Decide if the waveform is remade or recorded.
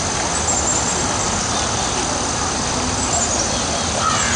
recorded